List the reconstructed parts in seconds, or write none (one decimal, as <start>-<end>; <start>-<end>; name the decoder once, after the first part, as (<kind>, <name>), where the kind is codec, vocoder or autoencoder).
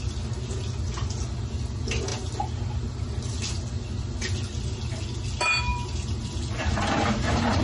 5.7-7.6 (vocoder, BigVGAN v2)